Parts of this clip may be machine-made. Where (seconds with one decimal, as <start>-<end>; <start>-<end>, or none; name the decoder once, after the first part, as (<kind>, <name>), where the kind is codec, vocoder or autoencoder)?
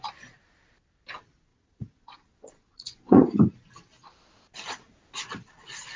1.5-3.4 (vocoder, Vocos)